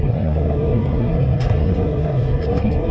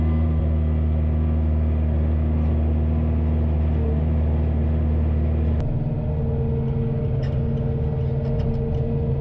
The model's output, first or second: first